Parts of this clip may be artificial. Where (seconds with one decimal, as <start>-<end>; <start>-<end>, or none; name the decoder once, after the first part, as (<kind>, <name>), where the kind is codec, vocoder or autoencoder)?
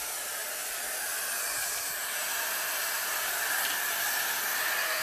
none